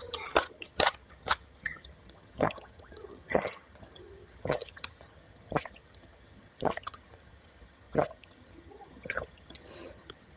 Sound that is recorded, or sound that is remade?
remade